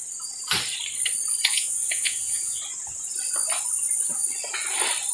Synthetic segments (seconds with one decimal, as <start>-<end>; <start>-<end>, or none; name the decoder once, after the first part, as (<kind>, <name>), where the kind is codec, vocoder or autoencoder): 1.5-2.6 (vocoder, Vocos)